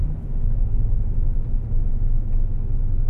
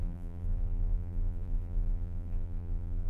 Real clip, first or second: first